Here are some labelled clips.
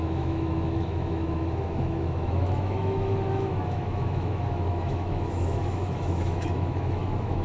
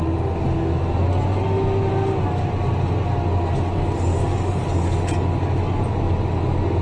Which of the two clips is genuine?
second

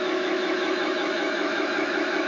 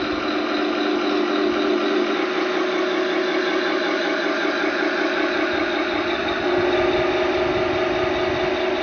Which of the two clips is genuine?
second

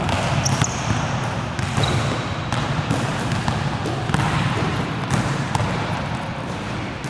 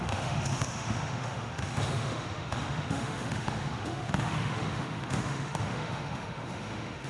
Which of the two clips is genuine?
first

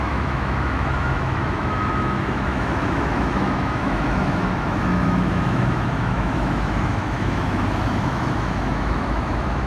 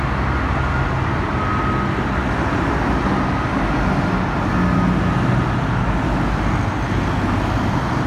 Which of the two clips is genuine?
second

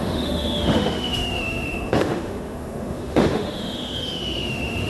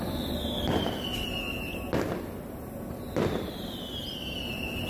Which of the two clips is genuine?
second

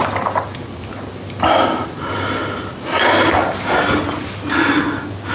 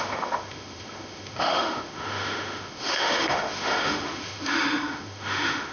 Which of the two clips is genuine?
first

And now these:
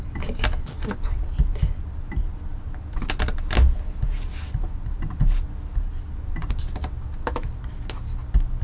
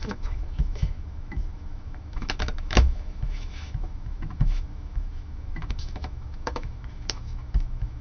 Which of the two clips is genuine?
first